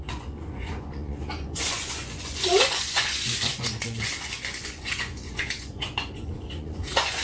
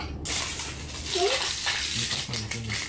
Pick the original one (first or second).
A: second